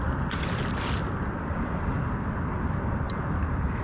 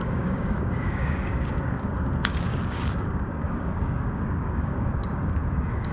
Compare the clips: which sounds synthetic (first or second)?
second